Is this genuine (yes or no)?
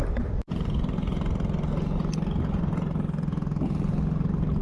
yes